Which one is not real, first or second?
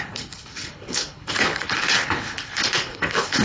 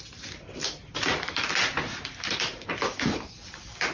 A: first